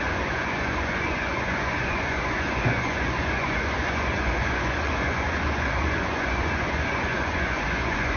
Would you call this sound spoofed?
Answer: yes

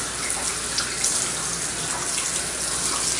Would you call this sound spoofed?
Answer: no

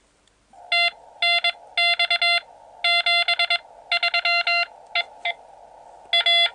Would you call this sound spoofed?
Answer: no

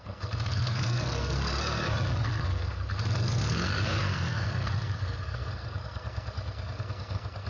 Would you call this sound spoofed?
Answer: yes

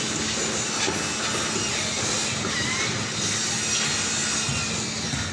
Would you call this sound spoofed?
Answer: no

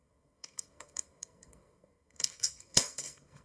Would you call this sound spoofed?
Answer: yes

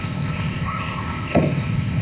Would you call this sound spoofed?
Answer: yes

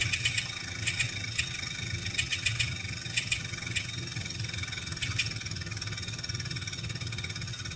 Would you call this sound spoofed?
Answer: yes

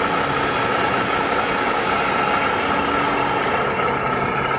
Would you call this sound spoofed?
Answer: no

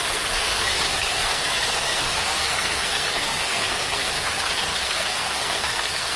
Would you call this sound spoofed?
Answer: yes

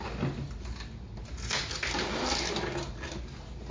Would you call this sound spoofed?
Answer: no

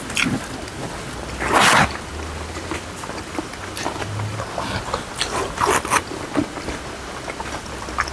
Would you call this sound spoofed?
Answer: no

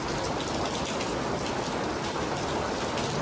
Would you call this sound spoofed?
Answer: no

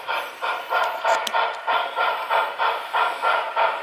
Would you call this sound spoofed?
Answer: no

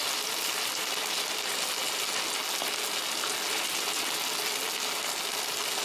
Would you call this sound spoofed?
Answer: no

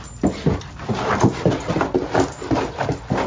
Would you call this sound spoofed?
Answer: no